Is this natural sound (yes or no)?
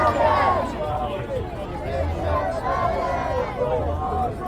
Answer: yes